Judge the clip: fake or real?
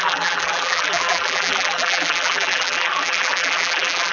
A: fake